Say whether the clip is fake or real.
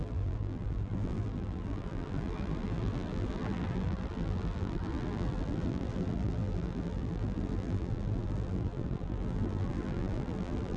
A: fake